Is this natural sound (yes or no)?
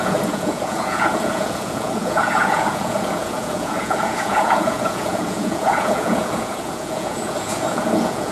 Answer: no